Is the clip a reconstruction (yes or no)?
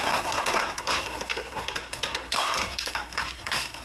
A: yes